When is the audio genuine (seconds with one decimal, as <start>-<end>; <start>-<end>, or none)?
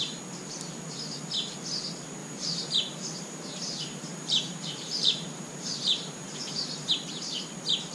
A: 0.0-2.2; 6.9-7.9